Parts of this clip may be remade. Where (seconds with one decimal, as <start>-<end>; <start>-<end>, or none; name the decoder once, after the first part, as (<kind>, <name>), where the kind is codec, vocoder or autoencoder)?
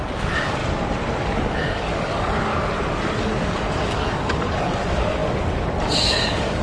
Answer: 0.0-0.6 (codec, DAC); 1.2-2.5; 3.2-5.2; 5.8-6.6